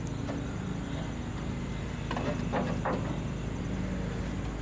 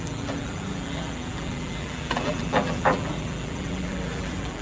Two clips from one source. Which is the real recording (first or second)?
first